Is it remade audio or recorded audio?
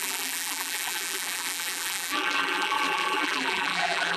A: remade